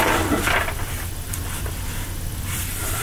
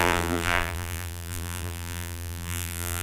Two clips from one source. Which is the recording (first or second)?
first